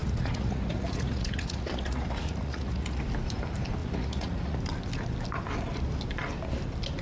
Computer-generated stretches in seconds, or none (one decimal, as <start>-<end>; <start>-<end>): 0.0-3.0; 3.8-4.6